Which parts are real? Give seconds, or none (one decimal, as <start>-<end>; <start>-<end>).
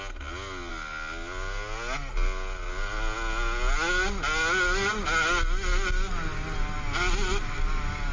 0.0-8.1